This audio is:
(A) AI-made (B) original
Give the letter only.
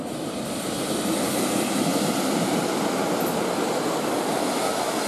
B